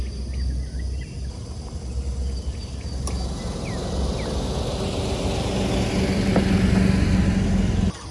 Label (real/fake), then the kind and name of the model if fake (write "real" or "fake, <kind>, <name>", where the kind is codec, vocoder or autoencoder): real